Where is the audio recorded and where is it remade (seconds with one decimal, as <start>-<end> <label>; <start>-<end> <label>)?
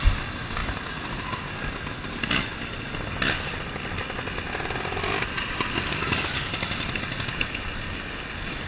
0.0-6.0 recorded; 6.0-6.5 remade; 6.5-8.7 recorded